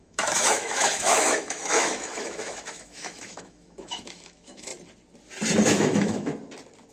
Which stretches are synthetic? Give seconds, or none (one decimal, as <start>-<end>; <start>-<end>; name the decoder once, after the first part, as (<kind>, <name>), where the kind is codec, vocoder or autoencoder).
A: 0.0-4.7 (autoencoder, DAC-VAE); 5.7-6.3